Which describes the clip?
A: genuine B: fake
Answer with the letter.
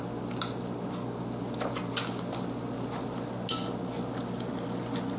A